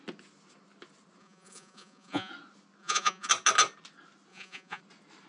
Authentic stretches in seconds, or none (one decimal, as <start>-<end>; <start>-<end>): 0.0-1.2; 2.3-2.8; 3.3-4.3; 4.8-5.3